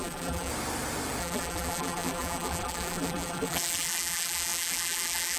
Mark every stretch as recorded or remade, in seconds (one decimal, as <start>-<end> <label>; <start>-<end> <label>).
0.0-0.5 remade; 0.5-1.2 recorded; 1.2-5.4 remade